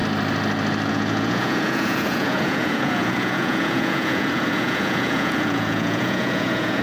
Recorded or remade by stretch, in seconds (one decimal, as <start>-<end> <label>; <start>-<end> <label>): 0.0-0.9 recorded; 0.9-6.8 remade